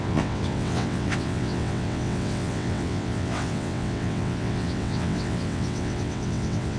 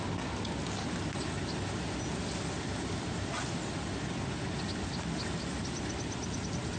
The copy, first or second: first